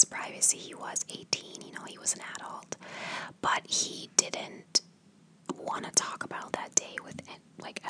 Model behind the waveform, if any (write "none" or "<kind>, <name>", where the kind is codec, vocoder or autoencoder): none